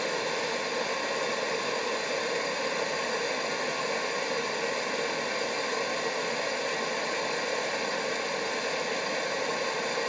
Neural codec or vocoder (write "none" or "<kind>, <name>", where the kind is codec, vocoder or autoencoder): none